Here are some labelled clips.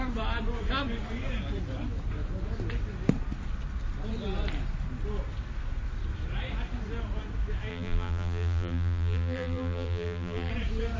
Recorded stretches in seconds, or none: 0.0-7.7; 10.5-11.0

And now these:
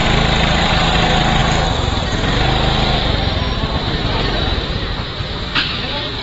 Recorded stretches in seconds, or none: 0.8-1.4; 3.5-6.2

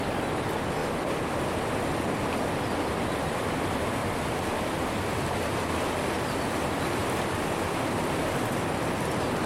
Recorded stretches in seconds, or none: 0.0-4.0; 5.4-7.0; 7.5-9.5

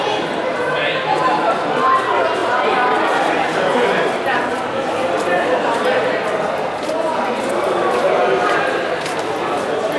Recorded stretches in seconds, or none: 0.0-2.4; 4.5-10.0

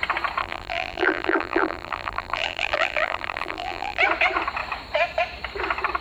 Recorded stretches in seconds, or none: 0.0-0.4; 4.0-6.0

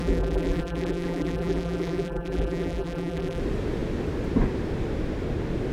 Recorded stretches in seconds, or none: 3.4-5.7

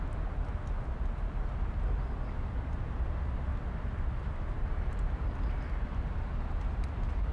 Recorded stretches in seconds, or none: 0.0-3.5; 4.8-7.3